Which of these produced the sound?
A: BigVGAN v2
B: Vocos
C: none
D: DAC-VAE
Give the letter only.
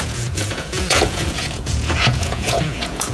B